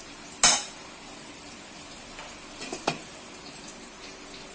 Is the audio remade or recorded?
recorded